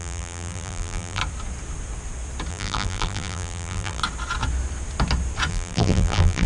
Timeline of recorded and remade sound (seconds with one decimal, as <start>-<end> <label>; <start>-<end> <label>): 0.0-1.2 remade; 1.2-2.5 recorded; 2.5-4.0 remade; 4.0-5.5 recorded; 5.5-6.5 remade